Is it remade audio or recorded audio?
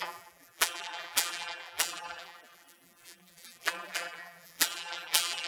remade